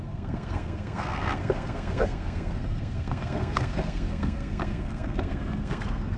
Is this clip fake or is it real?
fake